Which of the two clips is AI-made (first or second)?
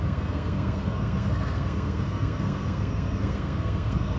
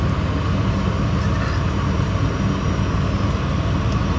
first